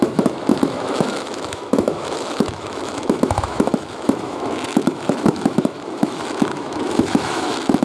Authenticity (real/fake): fake